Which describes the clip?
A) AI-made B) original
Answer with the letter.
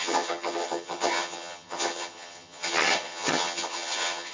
A